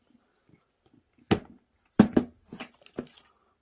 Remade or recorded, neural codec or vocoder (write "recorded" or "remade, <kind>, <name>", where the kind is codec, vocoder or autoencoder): recorded